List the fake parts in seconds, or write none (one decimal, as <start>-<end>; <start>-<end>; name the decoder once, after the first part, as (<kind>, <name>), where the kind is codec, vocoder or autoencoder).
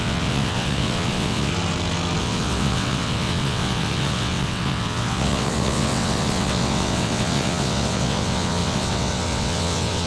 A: 0.0-1.5 (vocoder, WaveNeXt); 2.2-10.1